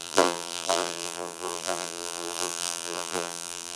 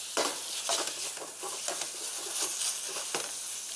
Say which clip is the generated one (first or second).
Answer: first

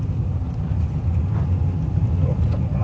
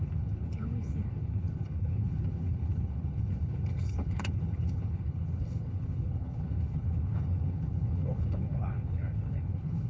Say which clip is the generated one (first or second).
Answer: second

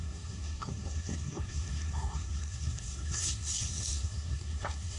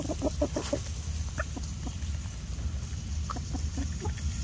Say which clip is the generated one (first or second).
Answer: first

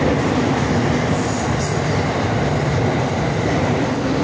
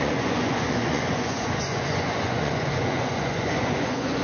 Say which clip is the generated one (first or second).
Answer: second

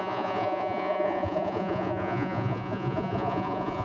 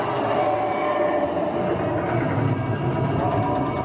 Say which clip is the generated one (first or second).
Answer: first